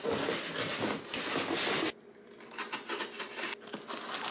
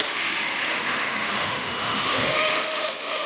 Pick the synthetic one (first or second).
second